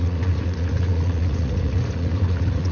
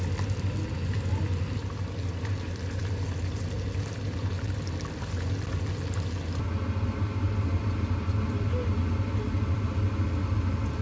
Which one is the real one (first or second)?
second